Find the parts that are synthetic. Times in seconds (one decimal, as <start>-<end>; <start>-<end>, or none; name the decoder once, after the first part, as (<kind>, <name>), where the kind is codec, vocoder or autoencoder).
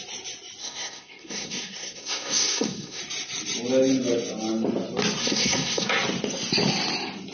0.6-3.0 (codec, SNAC); 5.2-5.9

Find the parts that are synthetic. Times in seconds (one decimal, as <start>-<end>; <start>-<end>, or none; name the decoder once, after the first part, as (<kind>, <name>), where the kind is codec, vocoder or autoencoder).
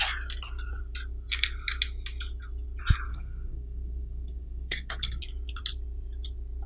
3.1-5.2 (codec, SNAC)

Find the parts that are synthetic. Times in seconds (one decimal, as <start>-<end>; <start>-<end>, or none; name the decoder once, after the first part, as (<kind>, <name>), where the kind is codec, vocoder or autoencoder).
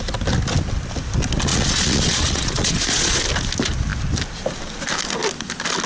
1.5-3.2 (vocoder, Vocos)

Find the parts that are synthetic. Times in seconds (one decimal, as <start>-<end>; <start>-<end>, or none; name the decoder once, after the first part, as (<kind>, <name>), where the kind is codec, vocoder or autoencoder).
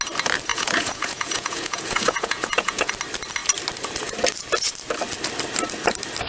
0.5-2.9 (vocoder, Vocos)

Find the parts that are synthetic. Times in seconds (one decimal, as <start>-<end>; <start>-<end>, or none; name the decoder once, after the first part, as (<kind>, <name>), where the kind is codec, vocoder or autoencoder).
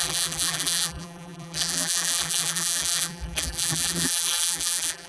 0.0-5.1 (vocoder, BigVGAN v2)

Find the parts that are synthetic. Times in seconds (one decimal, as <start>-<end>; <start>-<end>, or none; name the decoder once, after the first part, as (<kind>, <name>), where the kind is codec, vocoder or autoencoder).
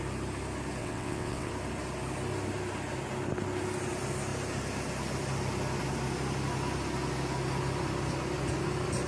0.8-1.5 (vocoder, WaveNeXt)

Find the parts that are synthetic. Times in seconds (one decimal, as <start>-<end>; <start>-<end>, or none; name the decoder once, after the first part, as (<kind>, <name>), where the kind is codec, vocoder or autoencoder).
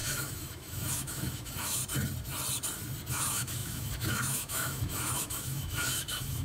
0.0-1.8 (autoencoder, DAC-VAE); 3.1-6.4